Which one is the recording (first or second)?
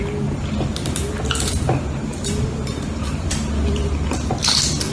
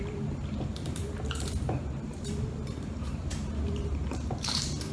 first